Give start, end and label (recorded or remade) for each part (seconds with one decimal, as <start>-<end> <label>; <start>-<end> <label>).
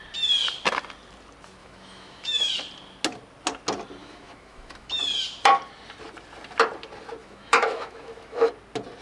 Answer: 0.0-1.6 recorded; 1.6-2.5 remade; 2.5-4.0 recorded; 4.0-5.0 remade; 5.0-7.2 recorded; 7.2-8.5 remade; 8.5-9.0 recorded